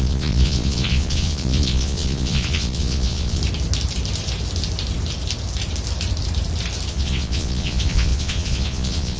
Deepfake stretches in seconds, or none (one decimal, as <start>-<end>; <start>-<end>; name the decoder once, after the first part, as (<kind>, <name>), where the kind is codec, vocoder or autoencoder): 0.0-3.4 (vocoder, Vocos); 6.9-9.2